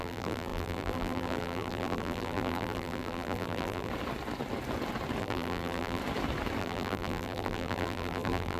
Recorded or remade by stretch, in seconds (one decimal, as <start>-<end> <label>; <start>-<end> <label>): 0.0-3.9 remade; 3.9-5.2 recorded; 5.2-6.0 remade; 6.0-6.6 recorded; 6.6-8.6 remade